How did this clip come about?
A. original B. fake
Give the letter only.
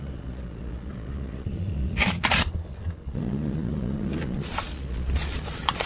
B